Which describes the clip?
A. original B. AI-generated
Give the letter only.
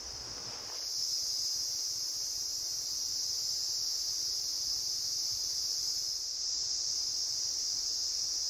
A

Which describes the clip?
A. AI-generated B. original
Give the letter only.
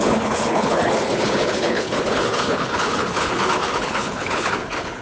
A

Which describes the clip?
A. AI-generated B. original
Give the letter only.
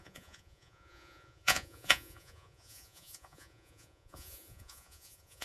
A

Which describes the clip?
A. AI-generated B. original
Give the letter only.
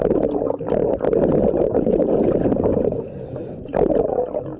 B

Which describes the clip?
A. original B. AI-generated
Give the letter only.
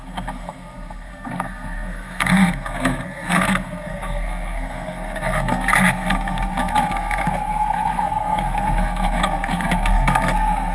B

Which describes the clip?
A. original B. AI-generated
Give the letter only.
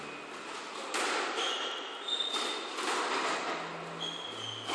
A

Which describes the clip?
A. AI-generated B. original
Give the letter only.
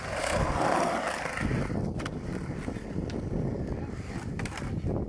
B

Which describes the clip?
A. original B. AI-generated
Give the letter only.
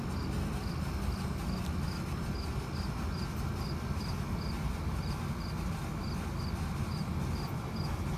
A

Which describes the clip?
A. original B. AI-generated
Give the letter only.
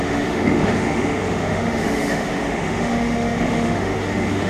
B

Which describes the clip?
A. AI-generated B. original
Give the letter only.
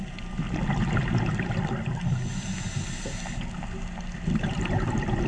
B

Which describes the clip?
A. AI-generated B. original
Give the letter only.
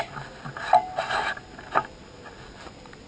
B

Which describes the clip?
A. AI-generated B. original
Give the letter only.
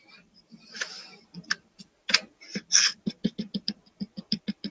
B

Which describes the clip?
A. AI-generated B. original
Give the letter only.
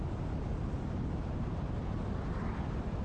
B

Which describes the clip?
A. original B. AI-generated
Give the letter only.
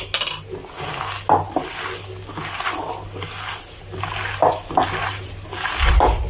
A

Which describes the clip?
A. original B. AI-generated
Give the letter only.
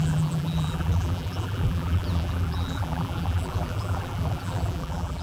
B